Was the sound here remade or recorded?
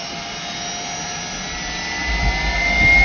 recorded